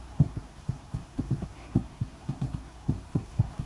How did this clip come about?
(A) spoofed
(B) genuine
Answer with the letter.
A